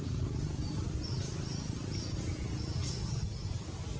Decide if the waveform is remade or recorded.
recorded